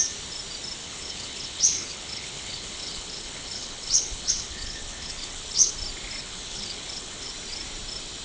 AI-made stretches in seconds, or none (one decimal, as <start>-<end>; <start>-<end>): 0.8-5.7; 6.2-7.3